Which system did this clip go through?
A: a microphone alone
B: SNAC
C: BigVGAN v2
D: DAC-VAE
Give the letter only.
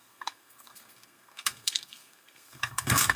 B